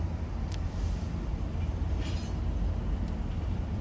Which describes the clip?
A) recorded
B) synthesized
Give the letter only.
A